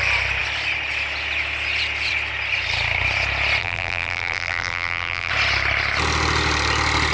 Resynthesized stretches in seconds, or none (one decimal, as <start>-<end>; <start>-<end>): 3.6-5.3